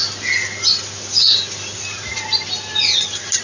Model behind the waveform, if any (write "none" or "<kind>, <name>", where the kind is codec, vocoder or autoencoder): none